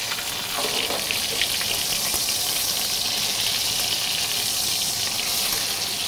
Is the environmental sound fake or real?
real